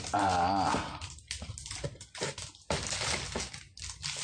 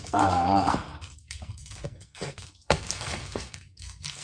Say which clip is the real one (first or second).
first